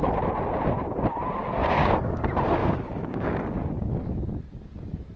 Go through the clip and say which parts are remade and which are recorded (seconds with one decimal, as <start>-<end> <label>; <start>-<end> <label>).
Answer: 0.0-1.6 recorded; 1.6-2.1 remade; 2.1-2.6 recorded; 2.6-3.4 remade; 3.4-5.2 recorded